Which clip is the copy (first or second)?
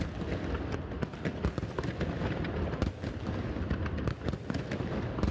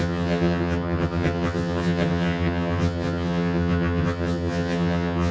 second